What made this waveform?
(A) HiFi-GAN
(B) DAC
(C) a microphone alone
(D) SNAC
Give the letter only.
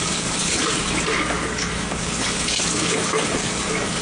B